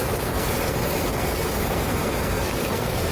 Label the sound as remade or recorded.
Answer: remade